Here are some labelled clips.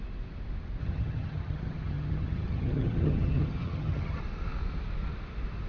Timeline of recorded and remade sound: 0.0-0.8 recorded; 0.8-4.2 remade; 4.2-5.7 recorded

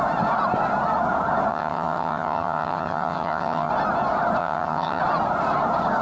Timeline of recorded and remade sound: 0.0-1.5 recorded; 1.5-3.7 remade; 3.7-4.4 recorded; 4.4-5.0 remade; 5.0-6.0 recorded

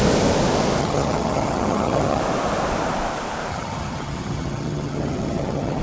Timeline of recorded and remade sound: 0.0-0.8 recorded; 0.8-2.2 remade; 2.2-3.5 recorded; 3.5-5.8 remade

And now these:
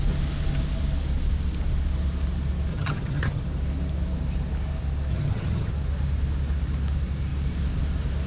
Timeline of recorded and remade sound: 0.0-2.7 recorded; 2.7-3.4 remade; 3.4-5.1 recorded; 5.1-5.7 remade; 5.7-8.3 recorded

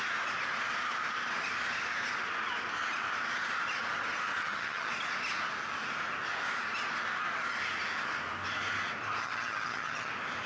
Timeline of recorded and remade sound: 0.0-4.4 recorded; 4.4-4.9 remade; 4.9-9.2 recorded; 9.2-10.1 remade; 10.1-10.5 recorded

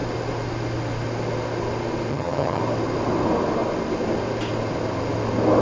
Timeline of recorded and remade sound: 0.0-2.1 recorded; 2.1-2.6 remade; 2.6-5.6 recorded